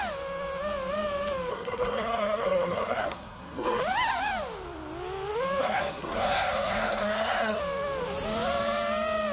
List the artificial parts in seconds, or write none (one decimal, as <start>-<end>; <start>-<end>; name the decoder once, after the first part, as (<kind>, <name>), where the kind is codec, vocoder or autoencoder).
1.5-3.8 (codec, SNAC); 5.6-7.6